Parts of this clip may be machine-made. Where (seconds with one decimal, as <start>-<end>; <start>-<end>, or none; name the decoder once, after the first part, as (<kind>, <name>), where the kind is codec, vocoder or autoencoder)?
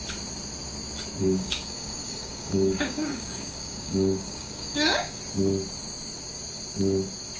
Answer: 1.2-5.2 (codec, DAC)